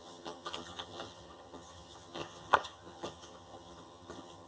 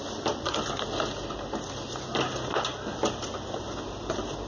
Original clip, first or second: second